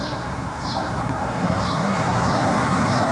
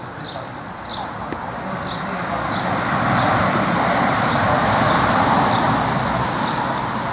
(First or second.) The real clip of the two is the second